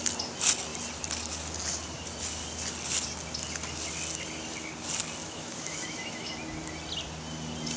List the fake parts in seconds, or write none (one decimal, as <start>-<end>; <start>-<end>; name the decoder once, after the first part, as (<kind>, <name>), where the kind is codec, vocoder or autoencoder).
5.2-6.3 (autoencoder, DAC-VAE)